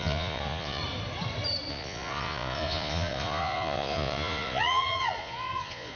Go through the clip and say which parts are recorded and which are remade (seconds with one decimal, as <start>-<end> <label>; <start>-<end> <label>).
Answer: 0.0-0.8 remade; 0.8-1.7 recorded; 1.7-6.0 remade